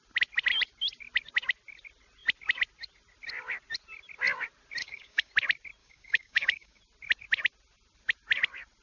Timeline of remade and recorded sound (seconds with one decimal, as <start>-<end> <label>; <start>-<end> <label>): 0.0-4.8 recorded; 4.8-5.3 remade; 5.3-5.8 recorded; 5.8-6.8 remade; 6.8-8.8 recorded